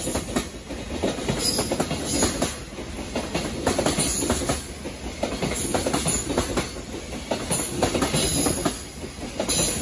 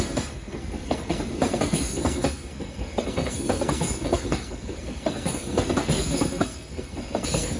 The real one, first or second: first